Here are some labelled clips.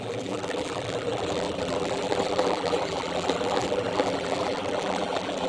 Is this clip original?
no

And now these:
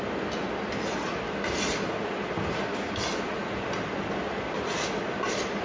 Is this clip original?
yes